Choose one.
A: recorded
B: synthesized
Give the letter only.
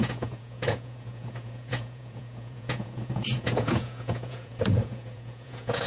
B